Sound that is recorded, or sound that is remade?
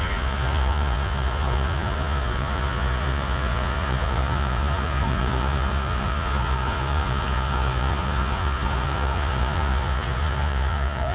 remade